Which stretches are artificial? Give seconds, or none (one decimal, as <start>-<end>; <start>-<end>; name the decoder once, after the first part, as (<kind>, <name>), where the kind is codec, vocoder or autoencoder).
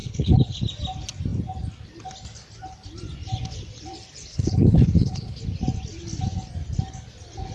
0.0-0.6 (codec, HILCodec); 4.3-5.4